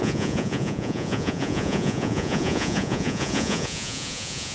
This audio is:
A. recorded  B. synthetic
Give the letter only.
B